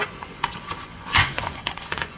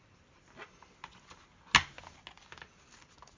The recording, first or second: second